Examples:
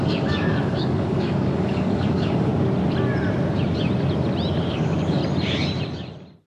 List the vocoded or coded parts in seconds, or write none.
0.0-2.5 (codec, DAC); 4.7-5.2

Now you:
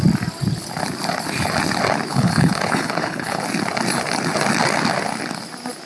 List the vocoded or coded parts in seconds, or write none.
2.1-3.4 (codec, HILCodec)

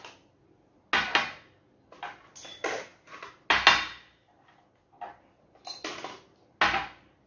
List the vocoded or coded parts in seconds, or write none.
none

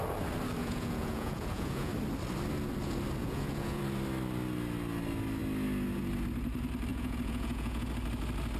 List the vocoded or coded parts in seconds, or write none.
0.6-1.9 (vocoder, Vocos); 3.2-3.8; 6.9-7.9

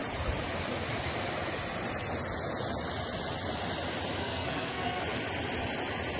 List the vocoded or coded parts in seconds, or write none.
4.2-5.0 (codec, SNAC)